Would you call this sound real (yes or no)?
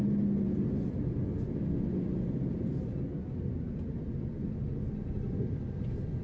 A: yes